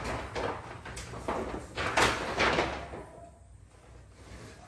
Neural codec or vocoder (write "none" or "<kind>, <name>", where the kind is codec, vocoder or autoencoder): none